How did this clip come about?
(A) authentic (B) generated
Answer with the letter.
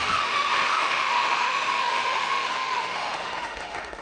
B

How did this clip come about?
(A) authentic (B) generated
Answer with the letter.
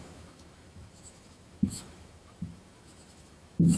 B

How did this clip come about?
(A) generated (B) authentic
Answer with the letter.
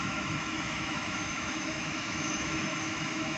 A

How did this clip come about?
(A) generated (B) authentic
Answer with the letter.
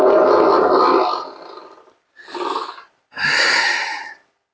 B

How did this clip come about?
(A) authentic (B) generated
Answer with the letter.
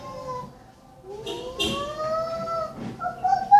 A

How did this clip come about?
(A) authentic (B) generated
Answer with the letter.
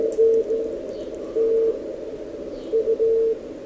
A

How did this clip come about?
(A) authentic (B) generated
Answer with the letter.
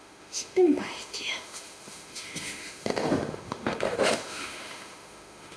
B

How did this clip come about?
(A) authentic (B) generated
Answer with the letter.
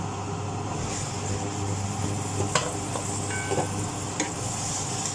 A